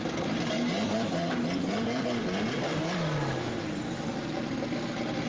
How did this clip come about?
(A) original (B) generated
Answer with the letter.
A